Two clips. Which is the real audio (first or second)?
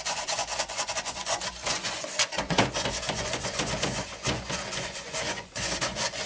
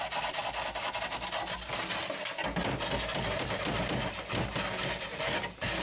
second